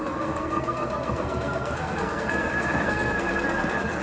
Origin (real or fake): fake